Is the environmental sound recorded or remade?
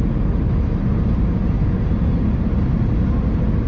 recorded